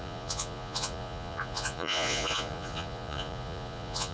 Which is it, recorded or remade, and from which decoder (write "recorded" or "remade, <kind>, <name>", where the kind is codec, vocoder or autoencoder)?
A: remade, vocoder, Vocos